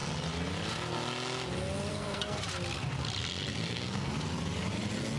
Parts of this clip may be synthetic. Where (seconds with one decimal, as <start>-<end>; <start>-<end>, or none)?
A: 1.9-2.4; 3.5-4.1

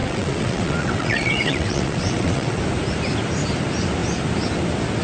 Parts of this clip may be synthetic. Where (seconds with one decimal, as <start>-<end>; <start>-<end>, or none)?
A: 0.0-2.6